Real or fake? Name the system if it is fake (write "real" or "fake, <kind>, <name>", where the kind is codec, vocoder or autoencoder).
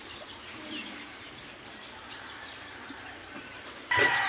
fake, vocoder, BigVGAN v2